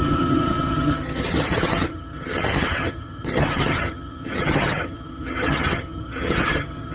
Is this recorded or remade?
remade